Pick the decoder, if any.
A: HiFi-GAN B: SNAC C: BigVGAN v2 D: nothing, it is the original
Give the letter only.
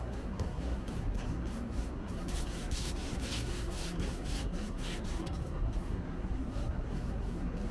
B